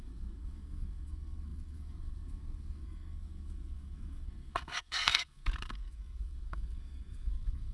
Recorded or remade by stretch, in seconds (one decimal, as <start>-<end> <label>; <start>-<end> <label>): 0.0-7.7 remade